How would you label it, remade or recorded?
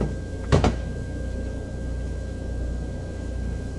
remade